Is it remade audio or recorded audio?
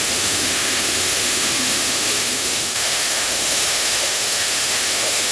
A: remade